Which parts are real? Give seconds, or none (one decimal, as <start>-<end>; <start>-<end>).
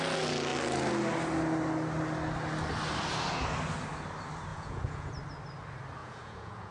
0.0-4.5; 5.1-6.0